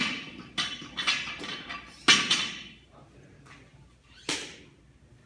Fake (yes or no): no